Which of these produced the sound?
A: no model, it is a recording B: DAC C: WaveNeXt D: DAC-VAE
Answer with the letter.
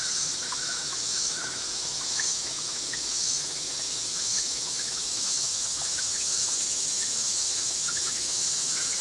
D